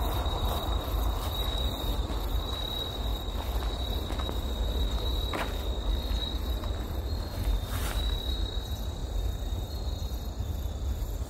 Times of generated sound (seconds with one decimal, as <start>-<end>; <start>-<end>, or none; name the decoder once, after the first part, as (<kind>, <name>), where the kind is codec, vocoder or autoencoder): 0.0-3.1 (vocoder, BigVGAN v2); 4.3-11.3